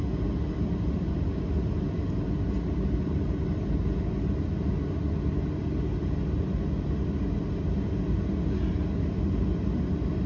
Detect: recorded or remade recorded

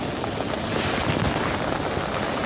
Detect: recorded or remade recorded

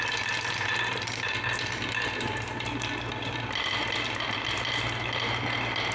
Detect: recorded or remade recorded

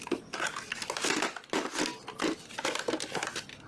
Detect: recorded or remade recorded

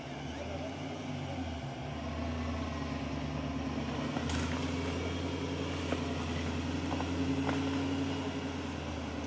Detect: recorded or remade recorded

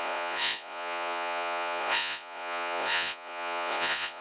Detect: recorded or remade remade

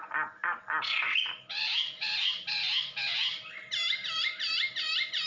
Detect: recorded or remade recorded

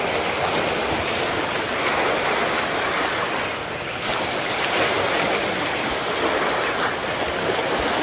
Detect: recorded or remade recorded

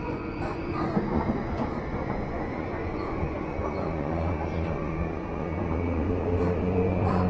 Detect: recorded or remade remade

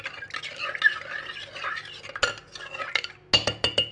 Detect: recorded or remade recorded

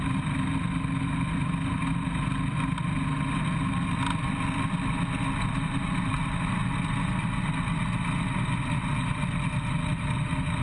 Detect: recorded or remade recorded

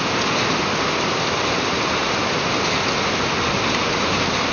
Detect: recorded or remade recorded